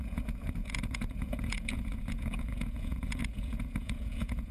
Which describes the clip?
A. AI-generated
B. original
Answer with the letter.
A